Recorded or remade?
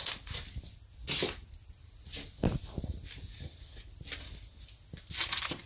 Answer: recorded